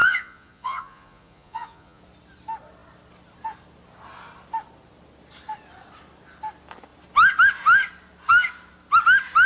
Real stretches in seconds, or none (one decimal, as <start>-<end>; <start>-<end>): 2.0-9.5